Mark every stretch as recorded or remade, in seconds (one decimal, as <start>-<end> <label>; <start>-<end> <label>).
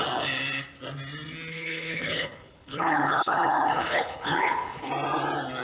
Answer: 0.0-1.5 recorded; 1.5-4.9 remade; 4.9-5.6 recorded